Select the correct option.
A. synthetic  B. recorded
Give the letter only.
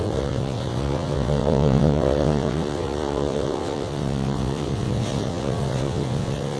A